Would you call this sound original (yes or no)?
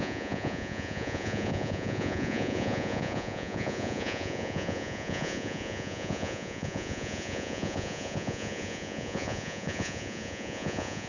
no